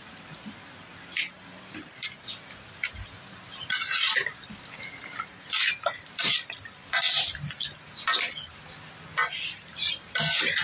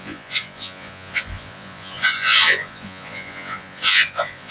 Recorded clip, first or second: first